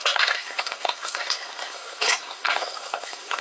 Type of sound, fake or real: fake